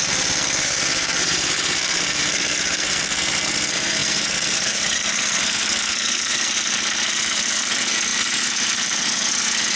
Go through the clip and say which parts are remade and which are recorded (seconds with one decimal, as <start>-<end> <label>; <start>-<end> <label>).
0.0-9.8 remade